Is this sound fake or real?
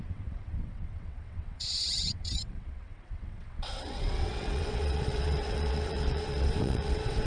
fake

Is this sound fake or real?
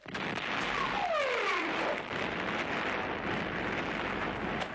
real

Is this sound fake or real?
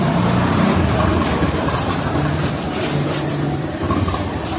fake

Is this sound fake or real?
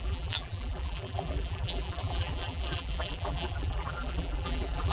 fake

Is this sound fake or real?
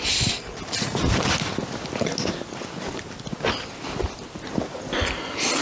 real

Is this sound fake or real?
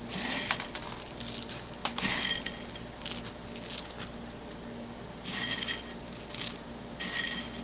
real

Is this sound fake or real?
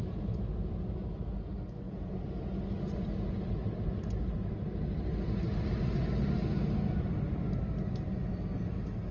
real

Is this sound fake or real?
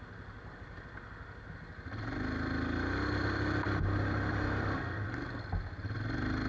real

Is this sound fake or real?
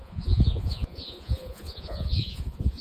fake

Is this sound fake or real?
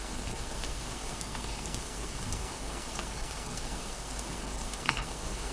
fake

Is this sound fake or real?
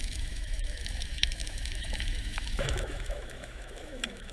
fake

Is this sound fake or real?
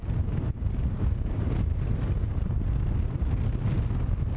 real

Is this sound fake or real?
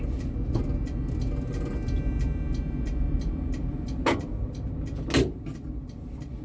real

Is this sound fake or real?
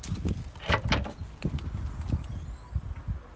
real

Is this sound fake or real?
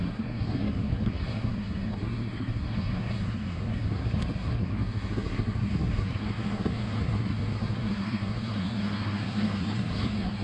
fake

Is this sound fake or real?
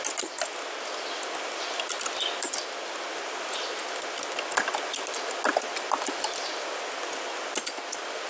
real